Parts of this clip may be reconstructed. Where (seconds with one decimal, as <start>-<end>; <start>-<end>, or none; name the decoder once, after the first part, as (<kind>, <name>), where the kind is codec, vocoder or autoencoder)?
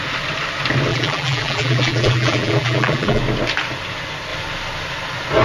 0.9-3.2 (vocoder, BigVGAN v2)